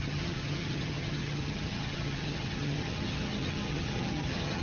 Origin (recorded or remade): remade